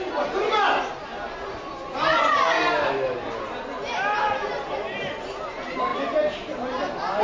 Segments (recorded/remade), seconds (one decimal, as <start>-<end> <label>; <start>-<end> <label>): 0.0-7.2 recorded